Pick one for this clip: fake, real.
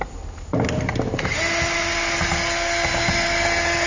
real